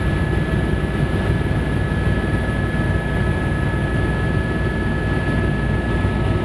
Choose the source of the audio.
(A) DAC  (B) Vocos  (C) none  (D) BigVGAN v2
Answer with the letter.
C